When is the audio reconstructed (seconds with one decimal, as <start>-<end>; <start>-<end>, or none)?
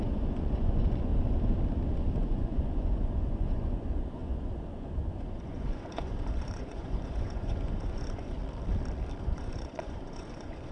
0.0-1.1; 2.2-8.4; 9.2-10.7